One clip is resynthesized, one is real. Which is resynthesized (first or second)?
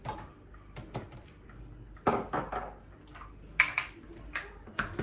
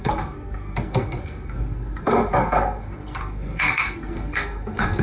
second